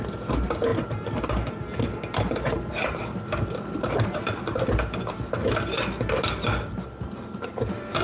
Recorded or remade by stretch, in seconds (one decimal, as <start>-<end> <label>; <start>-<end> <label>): 0.0-8.0 recorded